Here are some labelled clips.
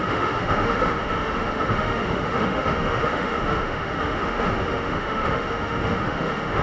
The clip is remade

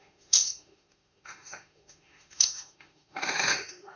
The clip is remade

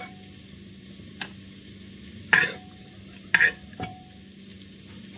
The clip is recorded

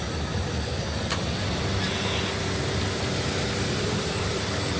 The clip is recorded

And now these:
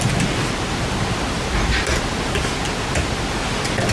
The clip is recorded